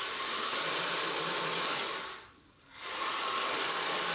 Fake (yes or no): no